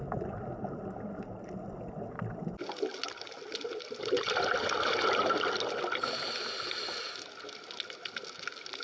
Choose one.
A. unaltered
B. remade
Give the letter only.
A